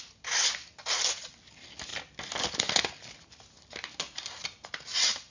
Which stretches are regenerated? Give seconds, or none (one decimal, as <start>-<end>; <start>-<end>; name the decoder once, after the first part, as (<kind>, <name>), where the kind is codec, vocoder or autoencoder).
none

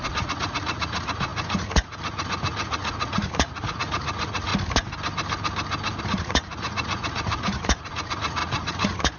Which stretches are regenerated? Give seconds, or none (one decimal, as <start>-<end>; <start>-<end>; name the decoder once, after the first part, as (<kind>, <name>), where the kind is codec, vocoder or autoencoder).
0.0-4.5 (vocoder, Vocos); 6.0-9.2